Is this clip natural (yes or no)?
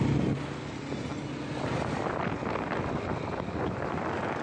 yes